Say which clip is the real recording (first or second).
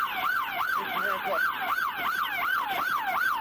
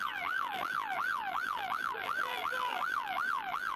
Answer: first